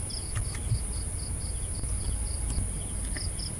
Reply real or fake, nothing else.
real